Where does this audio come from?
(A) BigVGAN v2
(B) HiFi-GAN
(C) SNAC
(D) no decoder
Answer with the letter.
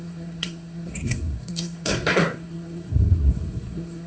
C